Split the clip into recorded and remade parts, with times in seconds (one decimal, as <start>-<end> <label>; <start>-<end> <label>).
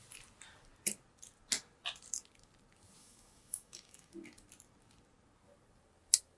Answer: 0.0-3.0 recorded; 3.0-4.1 remade; 4.1-6.4 recorded